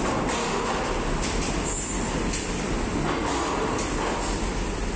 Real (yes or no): yes